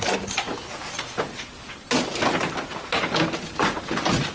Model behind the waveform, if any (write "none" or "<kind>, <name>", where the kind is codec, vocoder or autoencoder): none